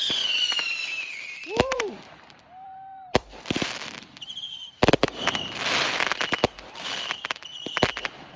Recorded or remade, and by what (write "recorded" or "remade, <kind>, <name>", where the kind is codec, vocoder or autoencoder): remade, vocoder, BigVGAN v2